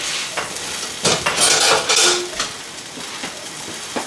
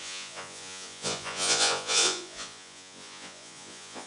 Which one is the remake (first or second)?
second